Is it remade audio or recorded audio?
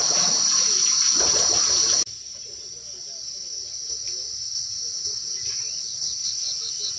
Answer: recorded